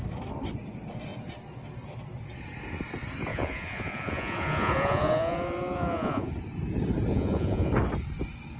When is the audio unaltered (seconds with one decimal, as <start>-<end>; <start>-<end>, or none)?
0.0-3.3; 6.3-7.1; 7.7-8.6